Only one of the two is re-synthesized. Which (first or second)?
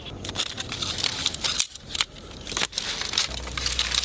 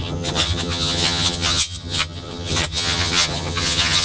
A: second